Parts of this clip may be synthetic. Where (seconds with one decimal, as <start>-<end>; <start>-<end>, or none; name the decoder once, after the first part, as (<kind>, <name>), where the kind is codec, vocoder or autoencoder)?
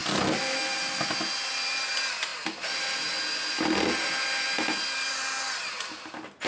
none